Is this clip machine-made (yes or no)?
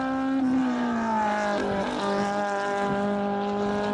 no